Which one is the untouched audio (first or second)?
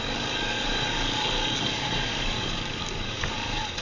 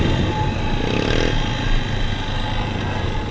second